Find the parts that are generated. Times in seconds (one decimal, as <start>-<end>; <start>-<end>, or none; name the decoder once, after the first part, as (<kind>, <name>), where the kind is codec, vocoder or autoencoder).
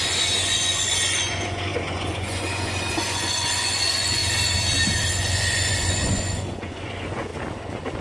0.0-4.2 (vocoder, Vocos); 5.1-7.3